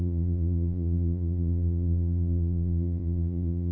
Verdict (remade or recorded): remade